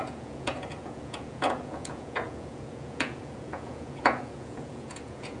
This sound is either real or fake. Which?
fake